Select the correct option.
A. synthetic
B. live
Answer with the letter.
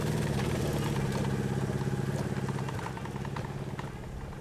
B